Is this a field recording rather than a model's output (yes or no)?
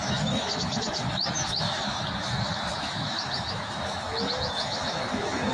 no